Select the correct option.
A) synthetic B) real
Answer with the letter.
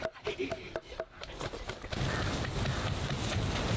B